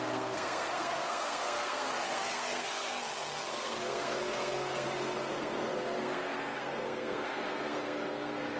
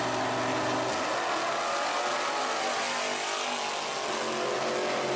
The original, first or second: second